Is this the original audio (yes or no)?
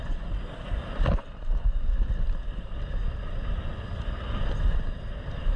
yes